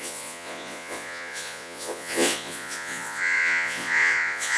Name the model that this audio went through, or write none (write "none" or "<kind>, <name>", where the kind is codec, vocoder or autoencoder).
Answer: vocoder, Vocos